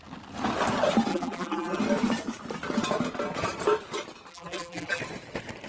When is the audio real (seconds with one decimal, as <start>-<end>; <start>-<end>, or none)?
0.0-1.1; 1.8-4.3; 5.0-5.7